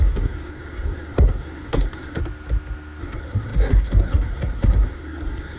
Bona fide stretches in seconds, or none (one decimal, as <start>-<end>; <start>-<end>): 2.2-3.0